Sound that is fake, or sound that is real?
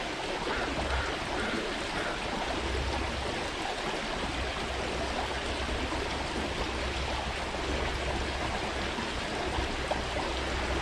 real